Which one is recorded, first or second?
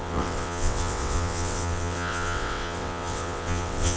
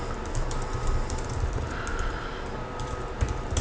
second